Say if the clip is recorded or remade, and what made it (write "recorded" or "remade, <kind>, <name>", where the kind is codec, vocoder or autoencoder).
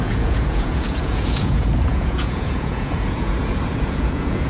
remade, vocoder, Vocos